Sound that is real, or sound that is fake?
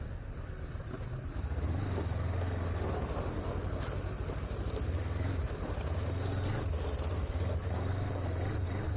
real